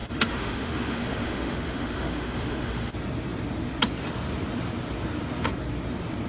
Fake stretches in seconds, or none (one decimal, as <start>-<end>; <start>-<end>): 0.0-2.9